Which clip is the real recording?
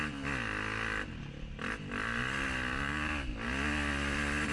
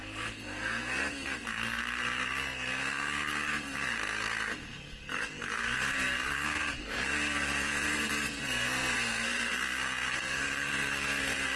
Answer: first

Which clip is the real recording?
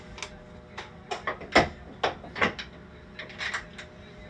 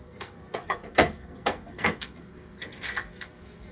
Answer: first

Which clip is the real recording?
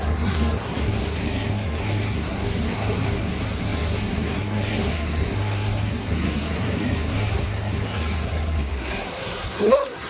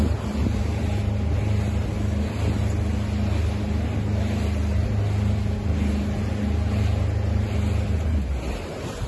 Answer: second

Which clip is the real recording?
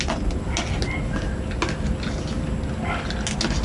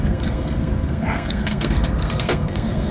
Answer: first